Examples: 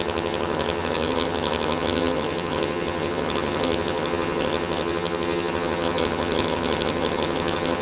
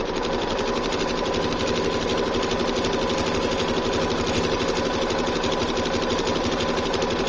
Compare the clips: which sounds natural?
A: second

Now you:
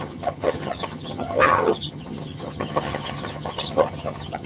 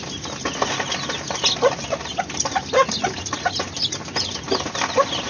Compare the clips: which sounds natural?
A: second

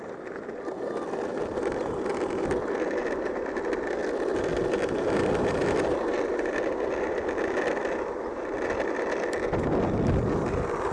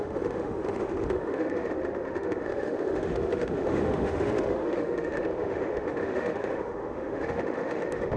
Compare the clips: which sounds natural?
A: first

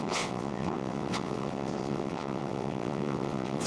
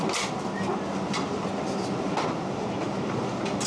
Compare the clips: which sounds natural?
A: second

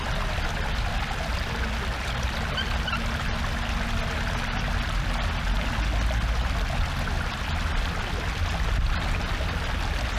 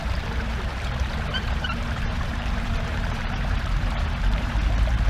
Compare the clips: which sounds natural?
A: first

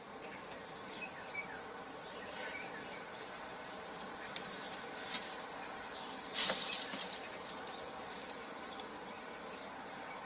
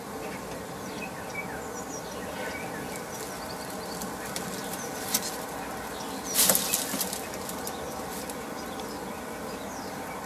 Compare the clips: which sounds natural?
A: second